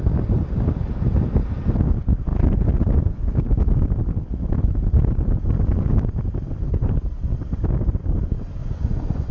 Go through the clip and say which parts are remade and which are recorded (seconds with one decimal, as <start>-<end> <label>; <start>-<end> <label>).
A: 0.0-8.6 recorded; 8.6-9.3 remade